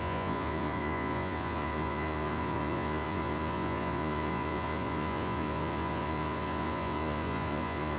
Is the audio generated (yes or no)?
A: yes